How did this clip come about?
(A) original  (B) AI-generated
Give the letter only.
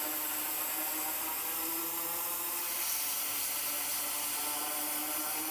A